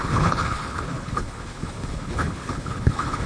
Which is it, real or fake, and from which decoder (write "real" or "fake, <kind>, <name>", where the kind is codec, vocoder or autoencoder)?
fake, codec, HILCodec